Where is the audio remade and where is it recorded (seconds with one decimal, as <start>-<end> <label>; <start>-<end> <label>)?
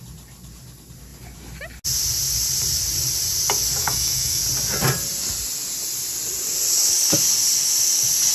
0.0-3.8 recorded; 3.8-4.4 remade; 4.4-8.3 recorded